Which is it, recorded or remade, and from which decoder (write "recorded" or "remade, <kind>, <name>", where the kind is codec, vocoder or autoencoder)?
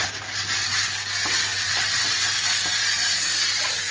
recorded